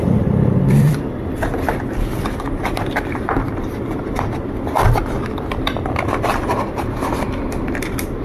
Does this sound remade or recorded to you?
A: remade